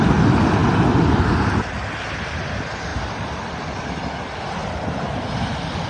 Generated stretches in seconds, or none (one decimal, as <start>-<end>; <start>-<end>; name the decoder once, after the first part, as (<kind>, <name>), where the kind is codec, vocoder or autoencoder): none